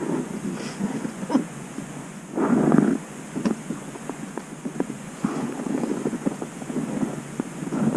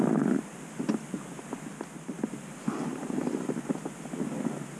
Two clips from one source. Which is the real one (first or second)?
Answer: second